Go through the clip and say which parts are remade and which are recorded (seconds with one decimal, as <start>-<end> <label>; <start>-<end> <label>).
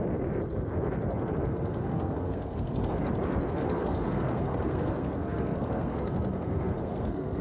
0.0-1.5 recorded; 1.5-2.9 remade; 2.9-3.6 recorded; 3.6-7.4 remade